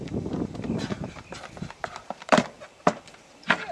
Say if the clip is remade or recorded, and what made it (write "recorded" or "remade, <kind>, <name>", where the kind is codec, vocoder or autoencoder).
remade, vocoder, BigVGAN v2